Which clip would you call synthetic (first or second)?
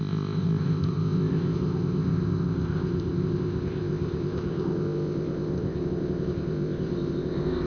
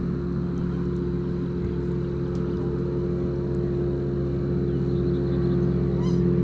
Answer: first